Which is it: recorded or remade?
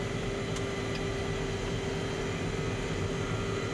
recorded